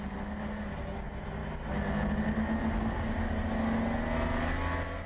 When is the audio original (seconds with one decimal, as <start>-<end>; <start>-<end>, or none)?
0.0-5.1